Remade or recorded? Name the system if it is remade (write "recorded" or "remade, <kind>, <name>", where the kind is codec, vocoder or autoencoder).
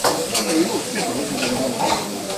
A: remade, codec, DAC